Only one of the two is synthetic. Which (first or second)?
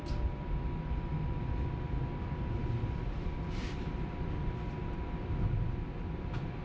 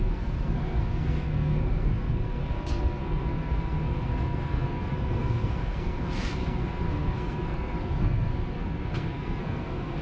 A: second